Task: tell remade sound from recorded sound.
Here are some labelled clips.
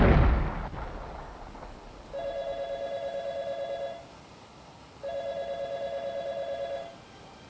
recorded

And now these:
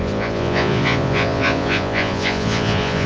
remade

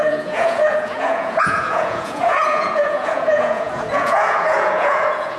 remade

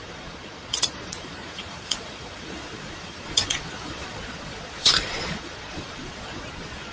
remade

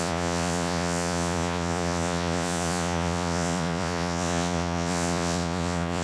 remade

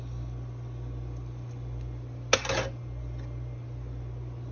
recorded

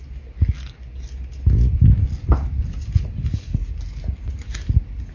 recorded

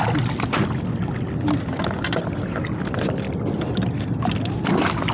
recorded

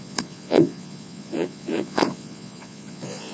remade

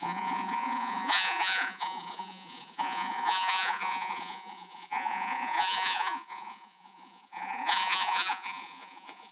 remade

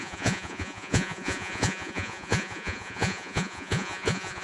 remade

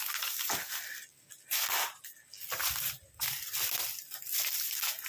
recorded